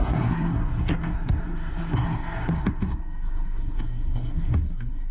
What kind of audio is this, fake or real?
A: fake